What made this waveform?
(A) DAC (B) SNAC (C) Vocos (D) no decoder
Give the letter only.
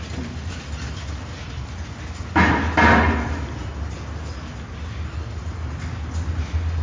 D